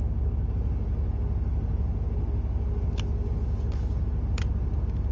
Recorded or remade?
recorded